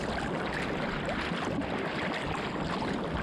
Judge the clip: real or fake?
real